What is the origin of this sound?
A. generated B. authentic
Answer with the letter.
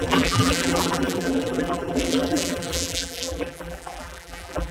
A